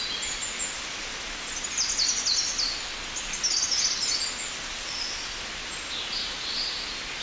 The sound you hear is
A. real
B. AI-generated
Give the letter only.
A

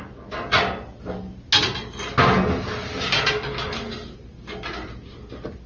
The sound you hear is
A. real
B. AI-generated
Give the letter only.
A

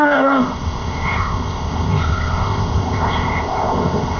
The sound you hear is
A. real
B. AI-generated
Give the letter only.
B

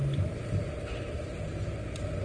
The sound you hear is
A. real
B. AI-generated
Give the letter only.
A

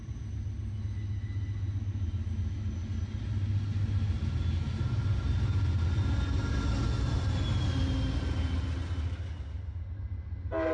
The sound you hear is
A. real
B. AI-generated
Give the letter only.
A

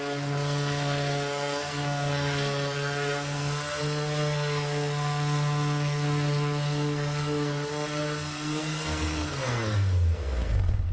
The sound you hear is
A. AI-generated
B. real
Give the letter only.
A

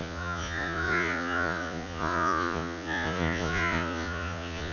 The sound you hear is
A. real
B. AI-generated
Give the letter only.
B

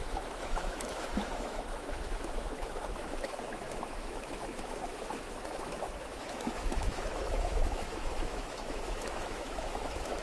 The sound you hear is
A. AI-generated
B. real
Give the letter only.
A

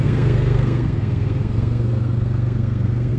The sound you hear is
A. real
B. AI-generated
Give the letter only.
B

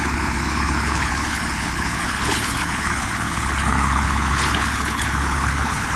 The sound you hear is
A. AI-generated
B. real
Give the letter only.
A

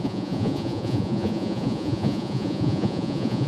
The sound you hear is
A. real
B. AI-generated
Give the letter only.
B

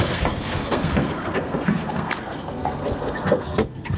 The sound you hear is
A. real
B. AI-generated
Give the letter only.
B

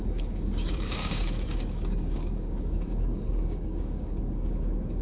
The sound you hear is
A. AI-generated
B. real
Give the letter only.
A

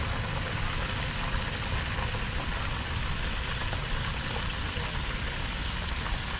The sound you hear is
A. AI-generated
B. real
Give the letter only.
B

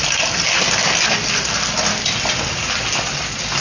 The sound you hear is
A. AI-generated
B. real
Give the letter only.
B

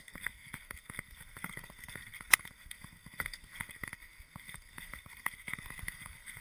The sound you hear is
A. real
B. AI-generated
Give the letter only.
B